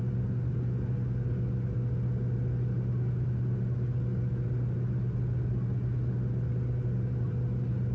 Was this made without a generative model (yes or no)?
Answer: yes